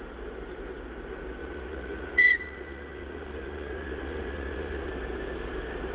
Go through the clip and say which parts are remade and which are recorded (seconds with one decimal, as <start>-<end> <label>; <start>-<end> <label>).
0.0-1.4 recorded; 1.4-4.9 remade; 4.9-5.9 recorded